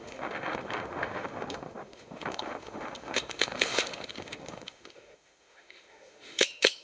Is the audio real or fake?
fake